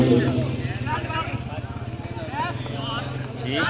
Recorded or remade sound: recorded